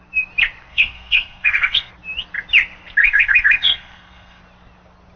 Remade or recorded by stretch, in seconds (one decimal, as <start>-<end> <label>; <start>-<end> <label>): 0.0-0.7 recorded; 0.7-1.9 remade; 1.9-3.0 recorded; 3.0-4.4 remade; 4.4-5.2 recorded